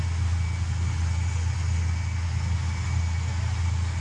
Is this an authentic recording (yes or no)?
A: yes